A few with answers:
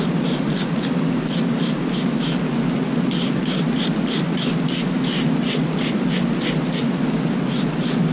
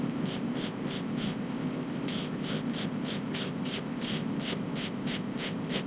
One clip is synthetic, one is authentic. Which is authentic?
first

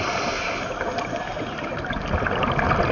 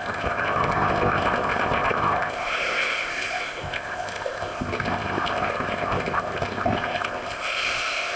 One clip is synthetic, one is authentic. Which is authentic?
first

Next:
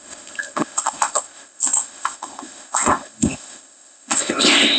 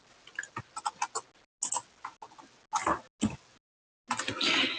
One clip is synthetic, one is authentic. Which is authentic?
second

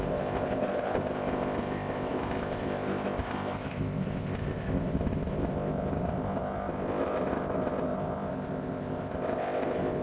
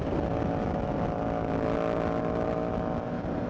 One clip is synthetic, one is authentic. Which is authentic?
second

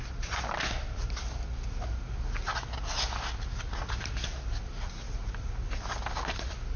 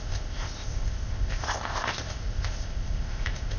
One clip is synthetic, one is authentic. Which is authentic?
first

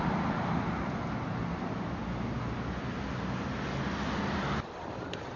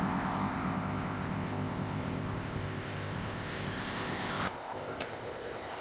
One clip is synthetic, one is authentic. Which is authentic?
first